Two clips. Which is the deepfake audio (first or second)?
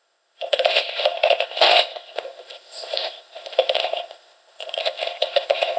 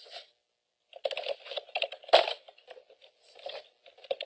first